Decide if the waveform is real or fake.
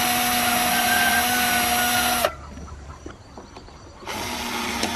real